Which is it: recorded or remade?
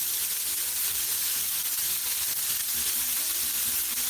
recorded